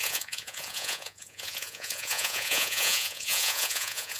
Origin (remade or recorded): remade